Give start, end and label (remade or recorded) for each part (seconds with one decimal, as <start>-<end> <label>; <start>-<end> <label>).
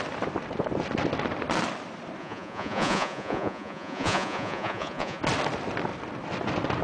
0.0-2.2 recorded; 2.2-5.2 remade; 5.2-6.8 recorded